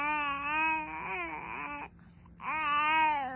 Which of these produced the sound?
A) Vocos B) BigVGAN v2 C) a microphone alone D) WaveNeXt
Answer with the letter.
C